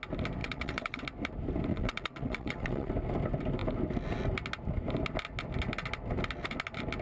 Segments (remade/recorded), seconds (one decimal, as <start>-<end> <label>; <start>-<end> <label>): 0.0-0.4 recorded; 0.4-1.0 remade; 1.0-1.7 recorded; 1.7-2.9 remade; 2.9-7.0 recorded